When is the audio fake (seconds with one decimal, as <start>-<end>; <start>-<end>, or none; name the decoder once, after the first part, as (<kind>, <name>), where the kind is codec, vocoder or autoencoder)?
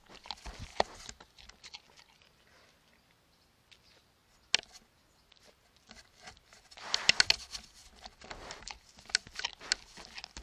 0.7-1.8 (vocoder, BigVGAN v2); 7.8-8.9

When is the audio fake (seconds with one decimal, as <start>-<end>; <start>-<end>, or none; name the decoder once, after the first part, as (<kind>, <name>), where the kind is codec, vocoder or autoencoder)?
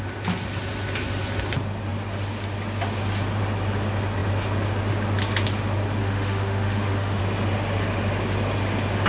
6.0-7.2 (autoencoder, DAC-VAE)